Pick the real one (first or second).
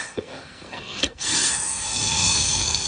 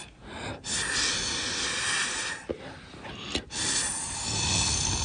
second